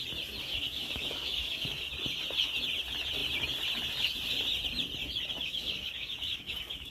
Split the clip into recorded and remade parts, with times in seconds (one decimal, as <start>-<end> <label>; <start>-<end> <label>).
0.0-0.5 recorded; 0.5-1.9 remade; 1.9-5.4 recorded; 5.4-6.9 remade